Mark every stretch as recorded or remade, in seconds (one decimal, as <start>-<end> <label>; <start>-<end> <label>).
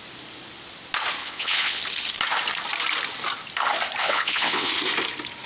0.0-1.2 recorded; 1.2-1.8 remade; 1.8-4.0 recorded; 4.0-4.7 remade; 4.7-5.5 recorded